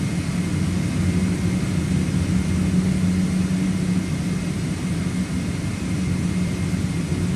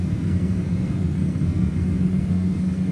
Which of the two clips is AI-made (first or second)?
second